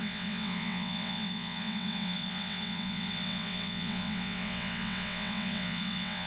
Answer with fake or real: fake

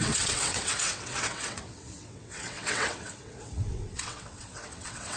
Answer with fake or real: fake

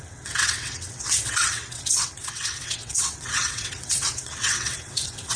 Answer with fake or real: fake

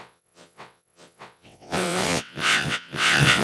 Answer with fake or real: fake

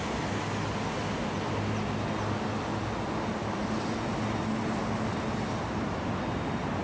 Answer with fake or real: real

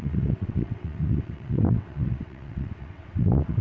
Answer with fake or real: fake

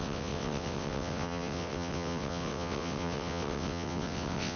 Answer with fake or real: fake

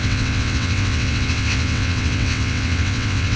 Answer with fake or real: fake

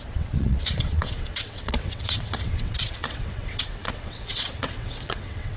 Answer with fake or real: fake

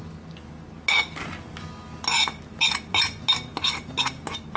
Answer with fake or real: real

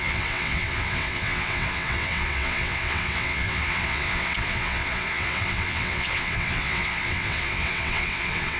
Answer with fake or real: fake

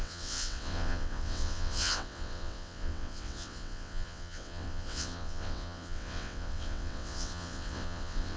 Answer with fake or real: fake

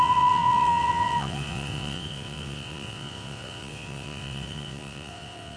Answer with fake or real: fake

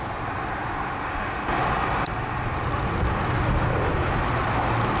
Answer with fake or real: real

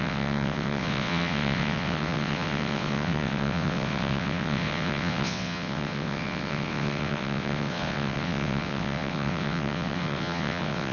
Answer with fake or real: fake